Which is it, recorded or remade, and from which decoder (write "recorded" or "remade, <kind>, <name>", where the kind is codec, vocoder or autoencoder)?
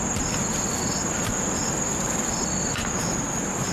recorded